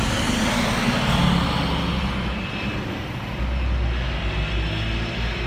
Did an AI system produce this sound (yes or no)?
no